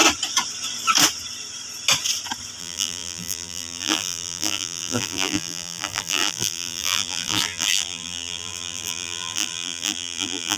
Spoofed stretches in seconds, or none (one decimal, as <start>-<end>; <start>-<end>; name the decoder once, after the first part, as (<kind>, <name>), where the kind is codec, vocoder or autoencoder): 2.6-10.6 (vocoder, BigVGAN v2)